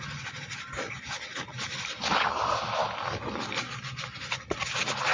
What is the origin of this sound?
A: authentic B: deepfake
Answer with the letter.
A